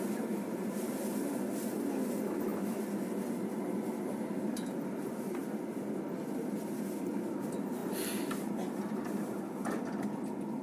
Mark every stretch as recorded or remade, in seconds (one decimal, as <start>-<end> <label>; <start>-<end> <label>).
0.0-10.6 recorded